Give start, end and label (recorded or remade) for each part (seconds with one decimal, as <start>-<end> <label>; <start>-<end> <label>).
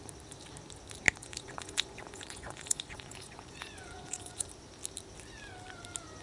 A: 0.0-1.2 recorded; 1.2-4.5 remade; 4.5-6.2 recorded